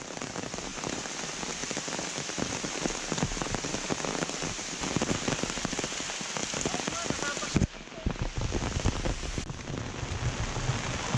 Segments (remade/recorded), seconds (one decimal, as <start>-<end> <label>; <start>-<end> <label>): 0.0-0.7 recorded; 0.7-1.2 remade; 1.2-11.2 recorded